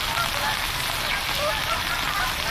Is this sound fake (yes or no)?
no